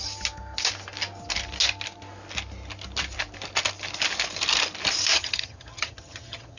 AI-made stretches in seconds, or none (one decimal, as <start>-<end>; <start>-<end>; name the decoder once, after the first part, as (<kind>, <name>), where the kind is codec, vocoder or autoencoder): 5.1-6.6 (vocoder, HiFi-GAN)